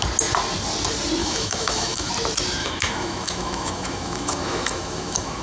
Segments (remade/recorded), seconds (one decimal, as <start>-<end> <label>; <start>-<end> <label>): 0.0-1.2 recorded; 1.2-2.1 remade; 2.1-2.6 recorded; 2.6-5.4 remade

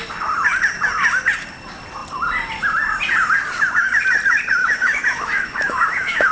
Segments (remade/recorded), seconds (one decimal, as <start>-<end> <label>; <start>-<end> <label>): 0.0-4.6 recorded; 4.6-6.3 remade

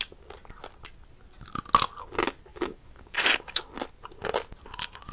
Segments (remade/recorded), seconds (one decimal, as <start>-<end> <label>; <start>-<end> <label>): 0.0-2.5 recorded; 2.5-3.6 remade; 3.6-5.1 recorded

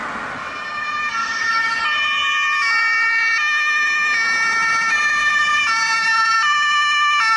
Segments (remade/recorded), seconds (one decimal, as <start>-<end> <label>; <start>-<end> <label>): 0.0-1.2 recorded; 1.2-1.8 remade; 1.8-7.4 recorded